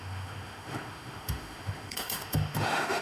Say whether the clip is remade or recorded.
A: remade